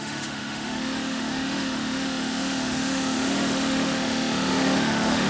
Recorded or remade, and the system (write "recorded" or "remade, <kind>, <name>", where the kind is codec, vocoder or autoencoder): remade, autoencoder, DAC-VAE